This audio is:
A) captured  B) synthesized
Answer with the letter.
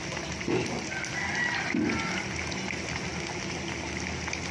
A